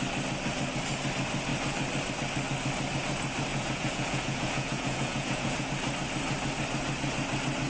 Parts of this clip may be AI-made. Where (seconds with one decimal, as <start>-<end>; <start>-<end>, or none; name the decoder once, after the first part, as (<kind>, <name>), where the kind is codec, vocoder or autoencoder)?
3.5-5.7 (vocoder, Vocos)